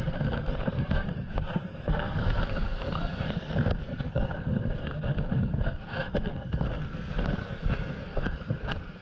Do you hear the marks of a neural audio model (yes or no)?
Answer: yes